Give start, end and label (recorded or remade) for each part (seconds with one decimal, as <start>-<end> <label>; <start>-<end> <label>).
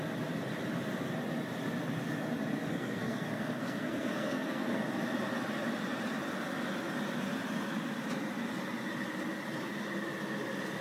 0.0-2.7 recorded; 2.7-4.8 remade; 4.8-10.8 recorded